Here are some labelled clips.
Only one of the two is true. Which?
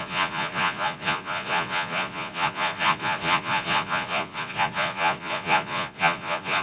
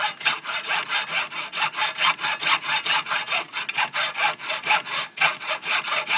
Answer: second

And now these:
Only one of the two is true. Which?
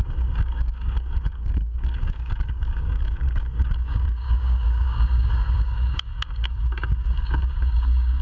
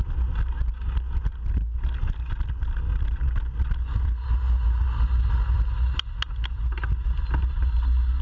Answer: second